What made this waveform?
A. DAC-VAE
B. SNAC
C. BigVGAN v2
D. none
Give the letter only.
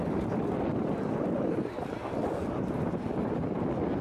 D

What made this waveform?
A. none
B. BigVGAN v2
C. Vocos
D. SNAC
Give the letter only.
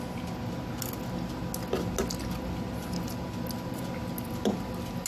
A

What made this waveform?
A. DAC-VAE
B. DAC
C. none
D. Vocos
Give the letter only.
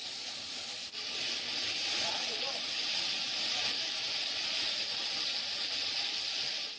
C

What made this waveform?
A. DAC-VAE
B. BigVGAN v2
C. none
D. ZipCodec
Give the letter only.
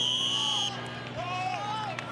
B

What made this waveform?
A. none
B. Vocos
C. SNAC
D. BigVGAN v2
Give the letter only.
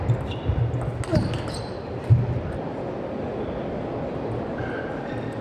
A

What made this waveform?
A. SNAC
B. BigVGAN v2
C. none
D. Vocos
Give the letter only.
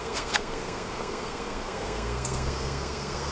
A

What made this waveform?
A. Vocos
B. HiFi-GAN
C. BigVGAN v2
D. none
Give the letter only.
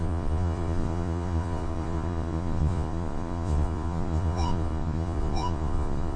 A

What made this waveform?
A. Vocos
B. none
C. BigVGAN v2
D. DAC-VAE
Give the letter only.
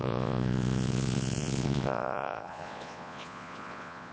A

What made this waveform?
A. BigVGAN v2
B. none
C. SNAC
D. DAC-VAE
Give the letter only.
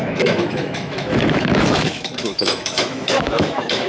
D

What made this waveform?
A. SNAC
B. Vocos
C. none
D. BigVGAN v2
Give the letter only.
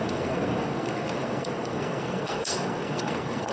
A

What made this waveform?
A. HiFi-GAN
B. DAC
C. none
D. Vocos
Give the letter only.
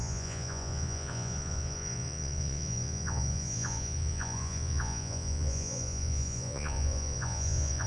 D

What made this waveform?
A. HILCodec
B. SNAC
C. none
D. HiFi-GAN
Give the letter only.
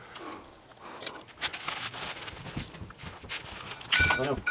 C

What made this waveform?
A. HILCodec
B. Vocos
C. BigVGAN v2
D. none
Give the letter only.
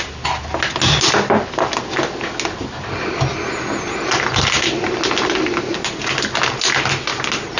D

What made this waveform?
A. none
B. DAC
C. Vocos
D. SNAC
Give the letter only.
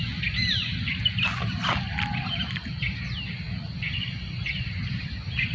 A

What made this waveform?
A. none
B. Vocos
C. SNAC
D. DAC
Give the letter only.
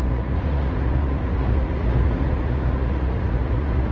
B